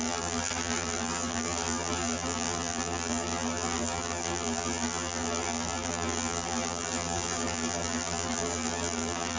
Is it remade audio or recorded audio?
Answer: remade